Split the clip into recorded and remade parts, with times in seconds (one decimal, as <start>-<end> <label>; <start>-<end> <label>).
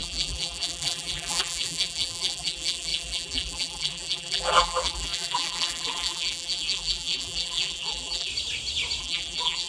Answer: 0.0-8.3 remade; 8.3-9.0 recorded; 9.0-9.7 remade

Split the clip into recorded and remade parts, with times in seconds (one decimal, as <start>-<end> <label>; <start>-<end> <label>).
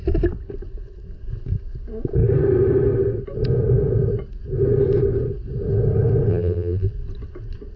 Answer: 0.0-6.3 recorded; 6.3-6.9 remade; 6.9-7.8 recorded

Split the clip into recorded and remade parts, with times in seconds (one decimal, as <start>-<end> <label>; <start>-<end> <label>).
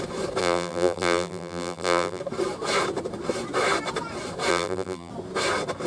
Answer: 0.0-0.4 recorded; 0.4-2.2 remade; 2.2-4.5 recorded; 4.5-5.1 remade; 5.1-5.9 recorded